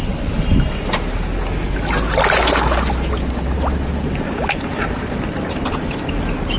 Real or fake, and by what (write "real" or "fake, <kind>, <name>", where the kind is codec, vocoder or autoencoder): real